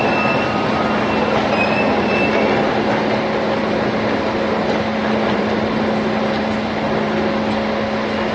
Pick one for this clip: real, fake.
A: fake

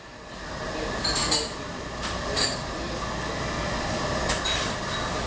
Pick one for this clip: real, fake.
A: real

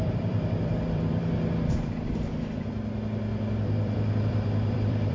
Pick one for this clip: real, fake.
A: fake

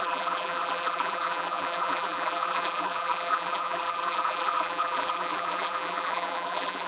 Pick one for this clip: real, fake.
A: fake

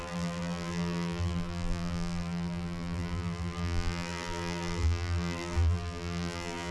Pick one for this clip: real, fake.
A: fake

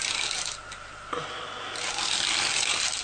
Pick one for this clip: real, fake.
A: real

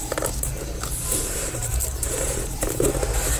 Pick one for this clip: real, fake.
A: real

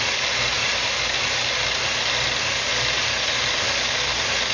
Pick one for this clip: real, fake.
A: real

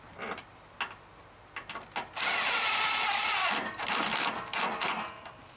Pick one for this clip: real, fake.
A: real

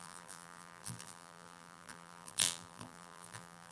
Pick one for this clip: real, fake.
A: fake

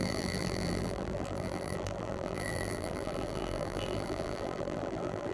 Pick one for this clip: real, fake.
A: fake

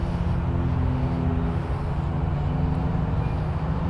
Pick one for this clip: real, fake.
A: real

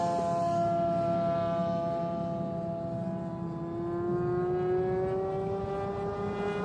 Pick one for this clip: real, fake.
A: real